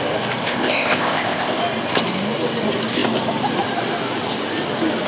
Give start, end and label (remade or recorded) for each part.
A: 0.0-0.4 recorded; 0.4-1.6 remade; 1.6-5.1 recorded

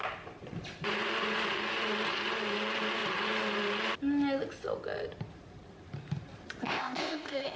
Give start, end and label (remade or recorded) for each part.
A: 0.0-6.6 recorded; 6.6-7.6 remade